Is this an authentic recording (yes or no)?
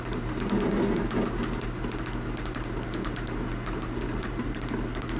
yes